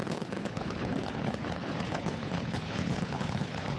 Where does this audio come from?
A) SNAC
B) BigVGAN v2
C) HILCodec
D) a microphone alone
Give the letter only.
C